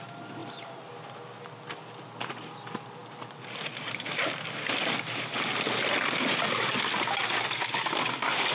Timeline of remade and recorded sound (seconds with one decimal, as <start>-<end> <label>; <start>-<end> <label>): 0.0-8.5 recorded